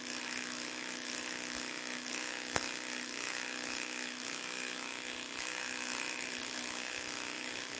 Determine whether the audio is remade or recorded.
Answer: remade